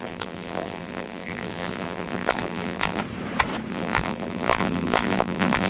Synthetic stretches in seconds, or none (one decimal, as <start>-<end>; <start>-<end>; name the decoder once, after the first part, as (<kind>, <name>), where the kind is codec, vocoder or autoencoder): 0.0-3.0 (vocoder, BigVGAN v2); 3.7-5.7